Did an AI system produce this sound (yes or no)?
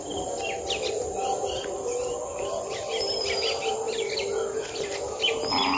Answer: no